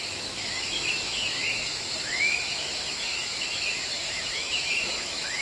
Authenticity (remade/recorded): remade